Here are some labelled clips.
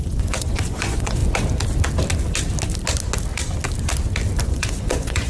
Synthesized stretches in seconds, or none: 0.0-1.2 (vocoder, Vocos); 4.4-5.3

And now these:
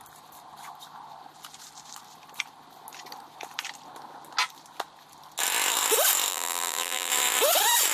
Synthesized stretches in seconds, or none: 6.3-7.1 (vocoder, BigVGAN v2)

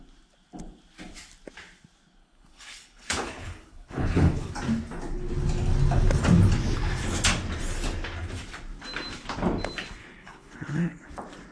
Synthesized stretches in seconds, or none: 2.2-4.5 (codec, HILCodec); 10.0-11.1